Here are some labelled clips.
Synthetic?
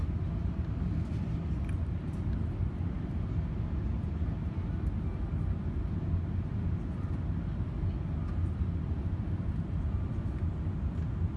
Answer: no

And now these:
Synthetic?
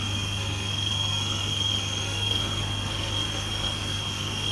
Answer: yes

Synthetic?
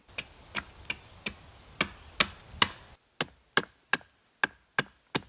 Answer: no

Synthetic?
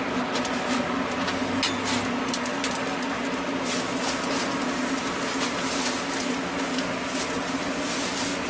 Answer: no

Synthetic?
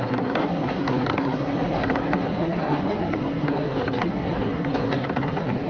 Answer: yes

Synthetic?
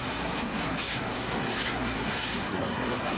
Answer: yes